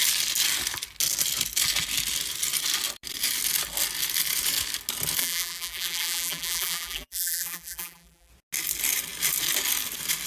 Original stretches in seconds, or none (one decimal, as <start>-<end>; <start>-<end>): 0.0-5.2; 8.3-10.3